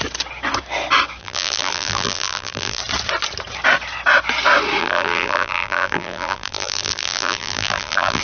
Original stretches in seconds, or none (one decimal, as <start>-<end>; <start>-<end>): 0.0-1.2; 2.8-4.8